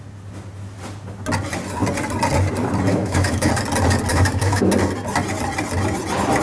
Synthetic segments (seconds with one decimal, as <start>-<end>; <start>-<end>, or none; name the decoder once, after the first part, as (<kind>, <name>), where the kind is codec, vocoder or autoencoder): 2.9-3.5 (autoencoder, DAC-VAE); 4.1-4.7